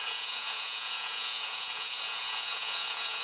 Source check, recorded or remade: remade